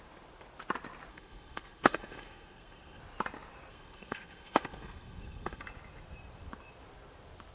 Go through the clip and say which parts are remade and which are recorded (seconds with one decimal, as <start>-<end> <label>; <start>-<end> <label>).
0.0-1.1 recorded; 1.1-3.0 remade; 3.0-3.7 recorded; 3.7-5.6 remade; 5.6-7.5 recorded